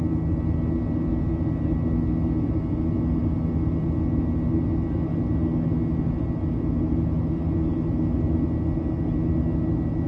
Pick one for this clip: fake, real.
real